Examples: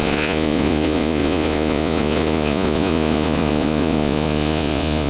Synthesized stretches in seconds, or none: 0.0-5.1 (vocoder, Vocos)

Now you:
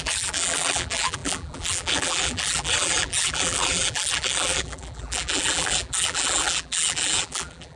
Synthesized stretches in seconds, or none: 0.0-7.8 (vocoder, BigVGAN v2)

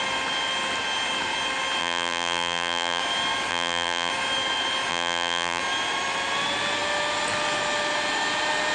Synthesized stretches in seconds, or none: 1.8-3.0 (vocoder, BigVGAN v2); 3.5-4.1; 4.9-5.6